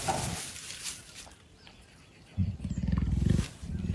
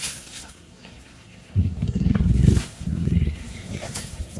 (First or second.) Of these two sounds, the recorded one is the first